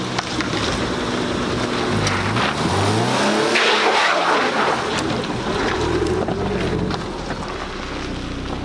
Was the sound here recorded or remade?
recorded